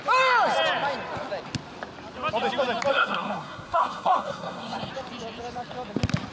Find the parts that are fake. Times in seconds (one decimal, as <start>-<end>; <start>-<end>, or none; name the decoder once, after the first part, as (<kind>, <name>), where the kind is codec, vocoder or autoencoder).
2.9-4.9 (codec, SNAC)